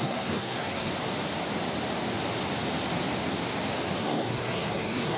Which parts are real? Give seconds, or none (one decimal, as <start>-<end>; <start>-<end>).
0.9-4.0